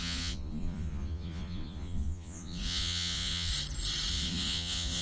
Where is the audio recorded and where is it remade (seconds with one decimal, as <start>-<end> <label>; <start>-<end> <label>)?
0.0-3.5 remade; 3.5-4.1 recorded; 4.1-5.0 remade